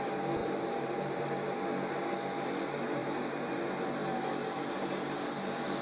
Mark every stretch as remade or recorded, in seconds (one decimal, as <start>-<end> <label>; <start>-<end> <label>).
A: 0.0-0.4 recorded; 0.4-1.2 remade; 1.2-3.0 recorded; 3.0-3.6 remade; 3.6-5.8 recorded